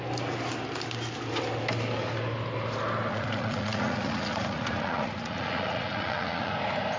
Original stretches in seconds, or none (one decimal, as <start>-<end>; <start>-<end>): 0.0-3.1; 6.5-7.0